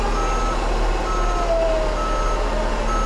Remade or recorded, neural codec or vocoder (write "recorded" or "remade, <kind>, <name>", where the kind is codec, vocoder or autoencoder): recorded